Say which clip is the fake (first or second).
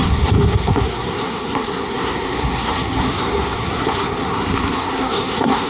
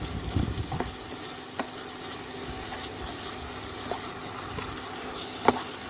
first